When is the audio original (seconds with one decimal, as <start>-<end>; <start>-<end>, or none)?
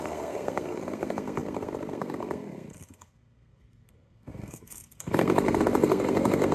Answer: none